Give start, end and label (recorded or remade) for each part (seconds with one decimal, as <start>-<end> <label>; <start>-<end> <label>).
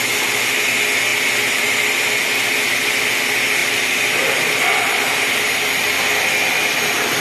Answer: 0.0-3.6 recorded; 3.6-5.5 remade; 5.5-7.2 recorded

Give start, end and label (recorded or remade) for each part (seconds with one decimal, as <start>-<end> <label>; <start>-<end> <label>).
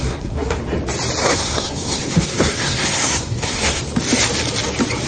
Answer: 0.0-0.6 remade; 0.6-1.2 recorded; 1.2-3.8 remade; 3.8-5.1 recorded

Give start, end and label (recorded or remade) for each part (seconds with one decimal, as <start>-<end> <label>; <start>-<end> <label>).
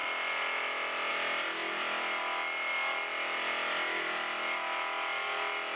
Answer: 0.0-5.8 recorded